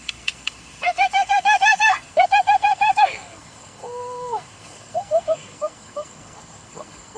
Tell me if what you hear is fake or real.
fake